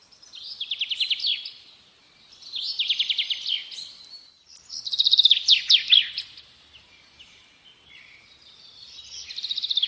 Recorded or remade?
recorded